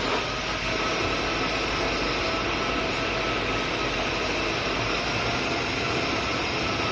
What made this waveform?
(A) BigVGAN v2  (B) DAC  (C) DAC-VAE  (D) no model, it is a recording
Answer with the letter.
D